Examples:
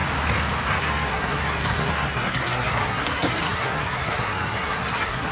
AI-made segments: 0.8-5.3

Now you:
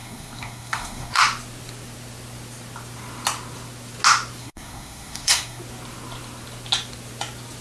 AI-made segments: 0.0-1.2; 4.4-5.6

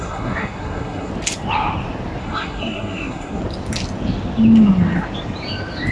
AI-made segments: 0.0-1.1; 2.2-3.4

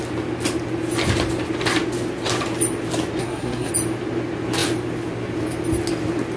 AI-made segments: 3.2-3.7